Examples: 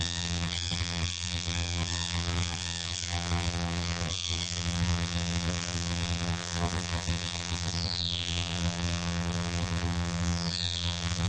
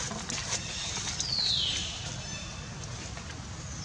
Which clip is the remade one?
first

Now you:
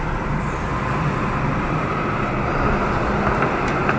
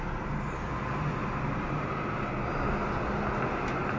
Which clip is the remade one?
first